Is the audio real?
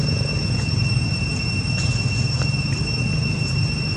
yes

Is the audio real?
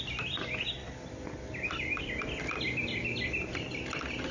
no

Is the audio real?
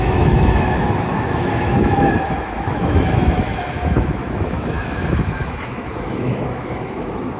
no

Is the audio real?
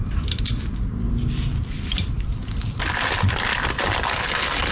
yes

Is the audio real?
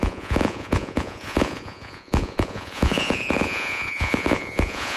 no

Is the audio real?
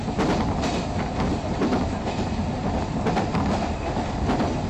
yes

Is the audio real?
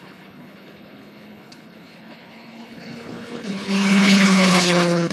no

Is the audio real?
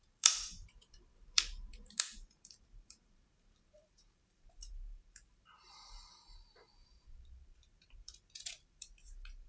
no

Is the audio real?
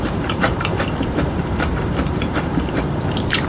no